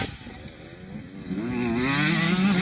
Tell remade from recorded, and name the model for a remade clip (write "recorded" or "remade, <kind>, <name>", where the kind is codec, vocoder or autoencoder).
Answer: recorded